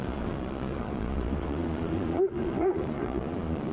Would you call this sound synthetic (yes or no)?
yes